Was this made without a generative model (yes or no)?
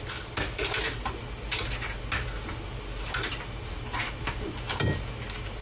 yes